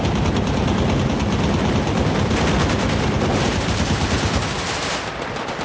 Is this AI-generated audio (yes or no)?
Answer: no